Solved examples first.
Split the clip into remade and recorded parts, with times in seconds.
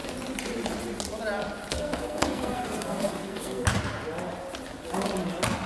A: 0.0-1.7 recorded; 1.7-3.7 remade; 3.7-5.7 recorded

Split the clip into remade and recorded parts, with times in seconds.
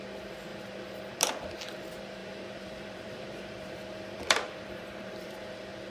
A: 0.0-2.2 recorded; 2.2-5.9 remade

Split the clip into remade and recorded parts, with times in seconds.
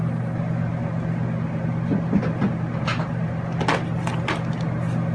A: 0.0-5.1 recorded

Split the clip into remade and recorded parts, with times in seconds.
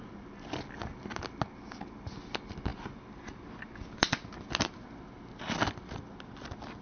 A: 0.0-6.8 recorded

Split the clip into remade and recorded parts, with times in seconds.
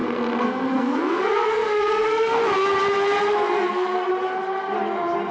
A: 0.0-2.4 remade; 2.4-3.3 recorded; 3.3-4.1 remade; 4.1-5.3 recorded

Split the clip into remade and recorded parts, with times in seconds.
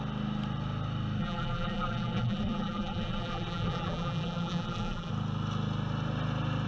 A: 0.0-1.2 recorded; 1.2-5.1 remade; 5.1-6.7 recorded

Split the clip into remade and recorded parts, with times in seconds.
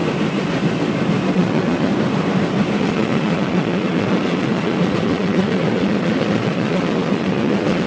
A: 0.0-1.3 recorded; 1.3-1.9 remade; 1.9-2.8 recorded; 2.8-7.9 remade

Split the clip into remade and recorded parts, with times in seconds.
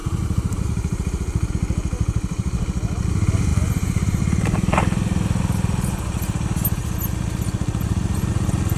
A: 0.0-1.5 remade; 1.5-3.5 recorded; 3.5-4.2 remade; 4.2-8.8 recorded